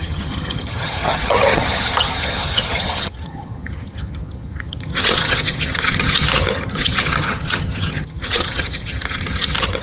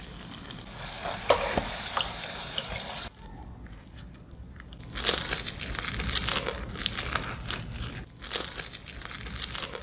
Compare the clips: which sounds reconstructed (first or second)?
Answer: first